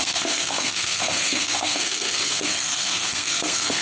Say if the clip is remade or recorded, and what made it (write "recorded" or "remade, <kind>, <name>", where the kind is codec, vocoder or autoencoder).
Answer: remade, codec, SNAC